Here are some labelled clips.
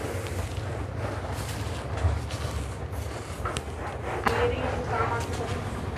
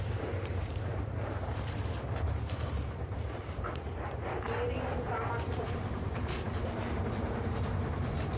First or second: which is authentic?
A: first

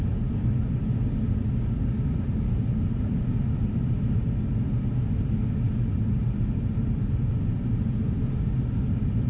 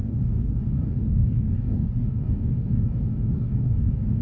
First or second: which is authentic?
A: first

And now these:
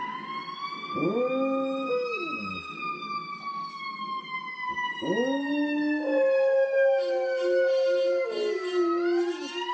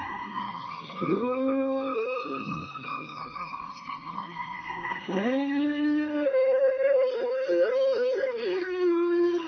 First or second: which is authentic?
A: first